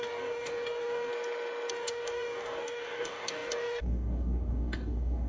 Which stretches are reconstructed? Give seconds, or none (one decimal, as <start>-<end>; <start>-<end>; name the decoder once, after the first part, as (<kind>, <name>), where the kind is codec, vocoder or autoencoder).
0.0-1.1 (codec, DAC); 1.7-5.3